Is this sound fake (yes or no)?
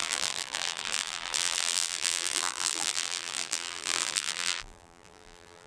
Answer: yes